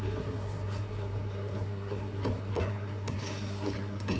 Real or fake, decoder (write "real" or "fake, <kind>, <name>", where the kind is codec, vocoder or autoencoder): fake, codec, SNAC